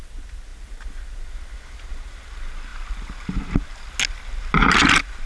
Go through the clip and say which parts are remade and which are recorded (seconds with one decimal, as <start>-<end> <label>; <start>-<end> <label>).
0.0-5.3 recorded